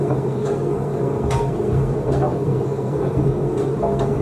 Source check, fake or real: fake